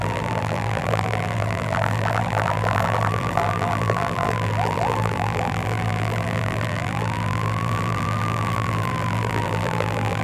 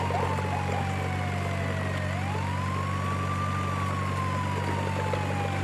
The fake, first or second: first